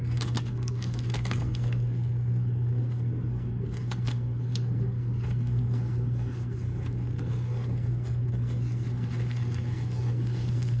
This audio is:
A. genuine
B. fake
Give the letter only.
B